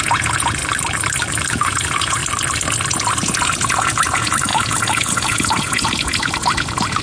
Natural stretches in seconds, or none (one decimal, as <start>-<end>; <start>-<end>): 0.6-1.5; 2.2-2.9